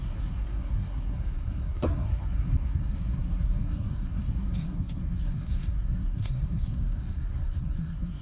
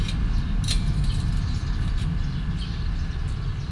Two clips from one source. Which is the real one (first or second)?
second